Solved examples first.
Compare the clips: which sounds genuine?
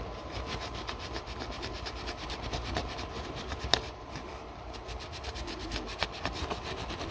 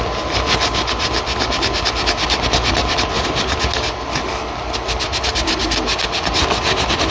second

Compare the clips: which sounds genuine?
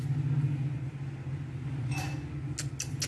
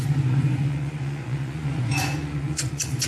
first